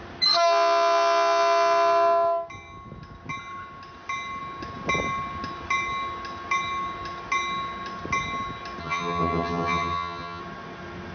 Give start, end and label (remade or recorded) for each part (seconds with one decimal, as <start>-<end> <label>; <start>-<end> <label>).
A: 0.0-8.8 recorded; 8.8-10.4 remade; 10.4-11.1 recorded